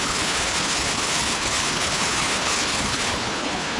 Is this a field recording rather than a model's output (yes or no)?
no